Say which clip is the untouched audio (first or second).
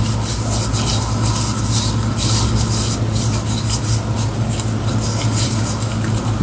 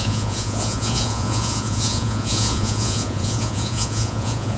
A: first